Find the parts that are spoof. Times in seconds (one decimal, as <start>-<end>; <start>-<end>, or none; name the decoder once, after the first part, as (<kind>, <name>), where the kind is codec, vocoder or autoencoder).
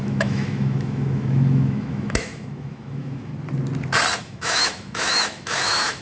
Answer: 0.0-3.3 (autoencoder, DAC-VAE); 4.2-6.0